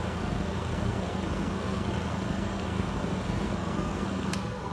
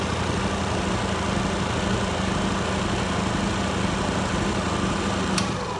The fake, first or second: first